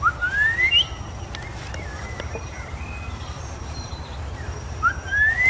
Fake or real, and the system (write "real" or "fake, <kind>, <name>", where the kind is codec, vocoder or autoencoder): real